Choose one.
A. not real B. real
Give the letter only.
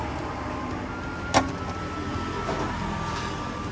B